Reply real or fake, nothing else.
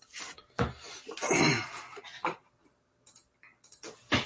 real